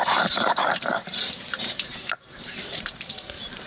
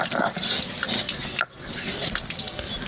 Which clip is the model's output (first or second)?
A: first